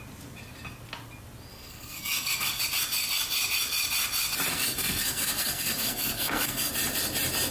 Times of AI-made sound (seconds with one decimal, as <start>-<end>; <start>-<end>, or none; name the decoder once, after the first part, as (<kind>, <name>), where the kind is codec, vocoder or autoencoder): 1.5-2.6 (codec, SNAC); 4.5-6.7